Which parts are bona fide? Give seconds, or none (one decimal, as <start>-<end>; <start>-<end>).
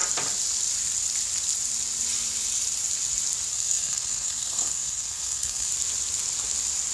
0.0-3.5; 5.7-6.9